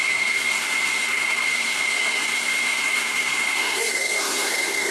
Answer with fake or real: fake